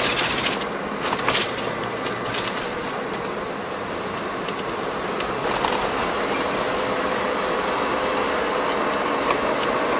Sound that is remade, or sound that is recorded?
recorded